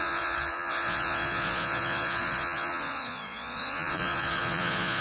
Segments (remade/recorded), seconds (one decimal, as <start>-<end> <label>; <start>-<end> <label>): 0.0-5.0 remade